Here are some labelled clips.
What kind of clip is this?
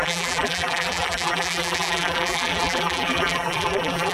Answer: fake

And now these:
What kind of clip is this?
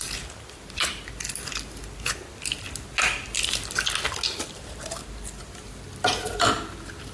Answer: real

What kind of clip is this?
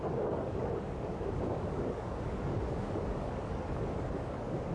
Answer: fake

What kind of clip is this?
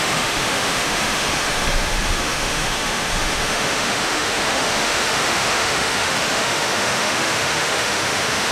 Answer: fake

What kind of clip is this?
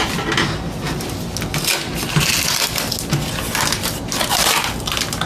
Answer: real